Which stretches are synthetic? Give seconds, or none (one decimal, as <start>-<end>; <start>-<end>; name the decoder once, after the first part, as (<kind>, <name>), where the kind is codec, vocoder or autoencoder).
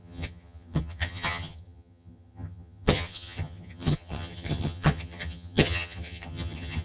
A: 0.0-6.8 (vocoder, HiFi-GAN)